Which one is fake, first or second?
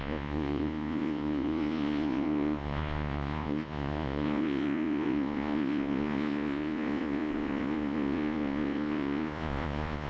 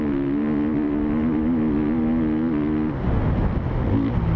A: first